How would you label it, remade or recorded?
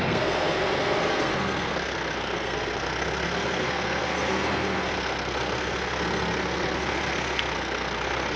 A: remade